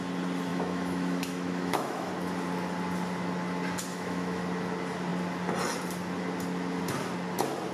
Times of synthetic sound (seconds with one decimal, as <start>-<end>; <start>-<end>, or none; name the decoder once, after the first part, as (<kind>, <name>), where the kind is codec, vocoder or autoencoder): 0.5-2.1 (autoencoder, DAC-VAE); 3.9-4.4